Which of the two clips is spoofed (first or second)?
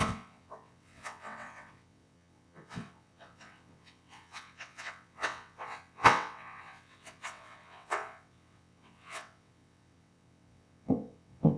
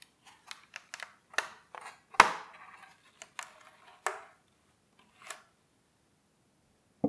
first